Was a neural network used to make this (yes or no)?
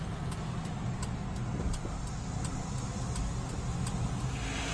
no